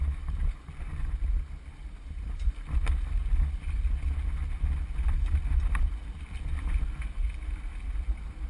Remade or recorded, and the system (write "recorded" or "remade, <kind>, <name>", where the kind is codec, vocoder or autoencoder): recorded